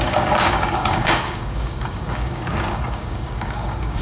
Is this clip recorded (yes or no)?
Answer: no